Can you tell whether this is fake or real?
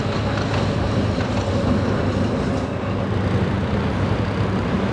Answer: real